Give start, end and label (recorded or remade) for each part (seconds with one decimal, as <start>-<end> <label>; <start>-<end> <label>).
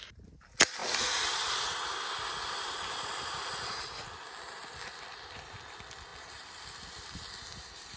0.0-8.0 recorded